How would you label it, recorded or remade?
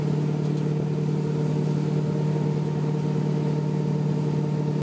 recorded